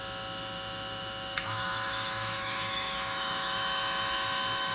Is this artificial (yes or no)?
yes